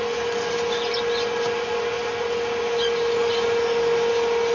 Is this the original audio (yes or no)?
yes